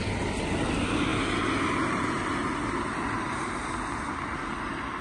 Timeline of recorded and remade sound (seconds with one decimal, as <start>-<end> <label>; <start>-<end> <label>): 0.0-5.0 recorded

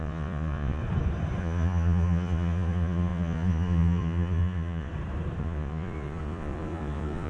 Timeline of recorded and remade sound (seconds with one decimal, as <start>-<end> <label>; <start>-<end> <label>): 0.0-0.8 remade; 0.8-1.4 recorded; 1.4-4.9 remade; 4.9-5.4 recorded; 5.4-7.3 remade

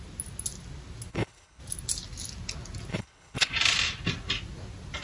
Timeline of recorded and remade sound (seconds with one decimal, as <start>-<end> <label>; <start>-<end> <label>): 0.0-1.1 recorded; 1.1-1.6 remade; 1.6-2.9 recorded; 2.9-3.5 remade; 3.5-5.0 recorded